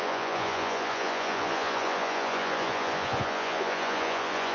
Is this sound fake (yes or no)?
yes